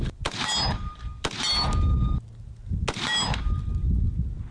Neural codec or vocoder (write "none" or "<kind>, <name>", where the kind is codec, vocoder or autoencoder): none